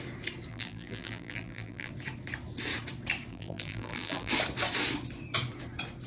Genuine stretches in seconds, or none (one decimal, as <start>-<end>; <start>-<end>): 0.0-0.5; 1.9-3.3; 4.3-6.1